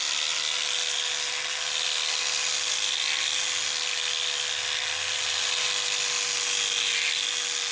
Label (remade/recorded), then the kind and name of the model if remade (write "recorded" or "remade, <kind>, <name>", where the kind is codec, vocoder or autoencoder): recorded